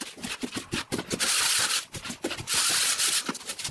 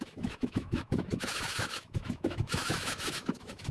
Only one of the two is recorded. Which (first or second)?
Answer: first